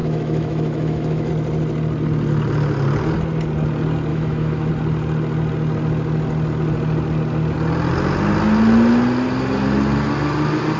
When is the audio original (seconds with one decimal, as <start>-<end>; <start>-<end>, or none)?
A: 1.3-4.1; 4.7-10.8